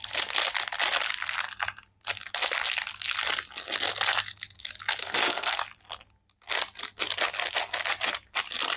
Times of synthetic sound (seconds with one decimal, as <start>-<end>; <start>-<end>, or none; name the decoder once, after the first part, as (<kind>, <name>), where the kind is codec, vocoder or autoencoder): 5.0-5.6 (codec, SNAC)

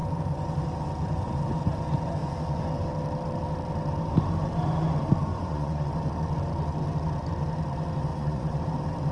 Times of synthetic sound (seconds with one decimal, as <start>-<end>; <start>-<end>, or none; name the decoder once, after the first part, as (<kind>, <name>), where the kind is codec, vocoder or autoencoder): 5.3-5.9 (vocoder, Vocos); 8.1-8.6